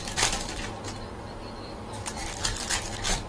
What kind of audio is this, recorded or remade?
recorded